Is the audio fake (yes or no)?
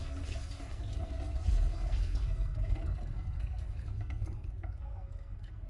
yes